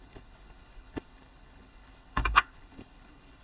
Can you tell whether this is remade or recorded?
remade